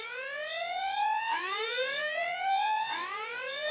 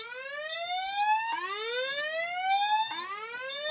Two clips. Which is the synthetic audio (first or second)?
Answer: first